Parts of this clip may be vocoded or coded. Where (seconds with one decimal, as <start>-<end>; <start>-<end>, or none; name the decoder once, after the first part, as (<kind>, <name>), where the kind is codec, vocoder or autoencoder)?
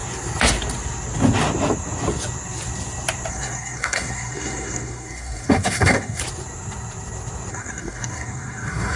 3.3-6.2 (codec, SNAC); 7.5-9.0